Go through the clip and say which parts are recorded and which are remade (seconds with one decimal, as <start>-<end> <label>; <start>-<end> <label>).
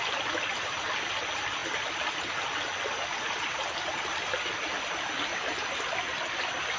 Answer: 0.0-6.8 recorded